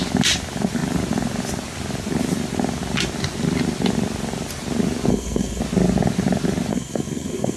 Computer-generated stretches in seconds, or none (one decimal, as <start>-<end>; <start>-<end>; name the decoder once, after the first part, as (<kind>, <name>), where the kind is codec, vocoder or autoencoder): 5.1-5.6 (codec, SNAC); 6.7-7.6